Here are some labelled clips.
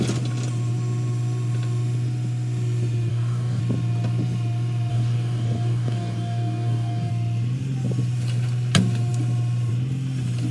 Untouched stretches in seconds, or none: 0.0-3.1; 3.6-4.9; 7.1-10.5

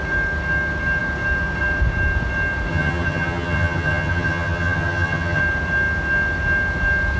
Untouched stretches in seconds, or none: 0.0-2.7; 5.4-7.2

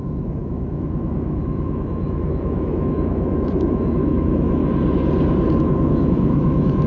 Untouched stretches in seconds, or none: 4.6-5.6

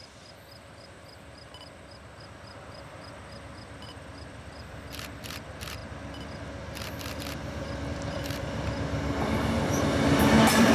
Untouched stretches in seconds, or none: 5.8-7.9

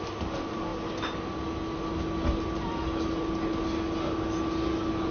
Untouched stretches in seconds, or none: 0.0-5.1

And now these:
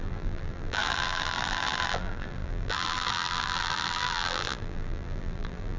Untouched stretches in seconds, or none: none

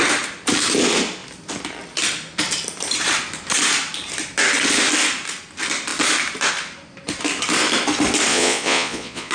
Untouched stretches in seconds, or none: 0.0-8.3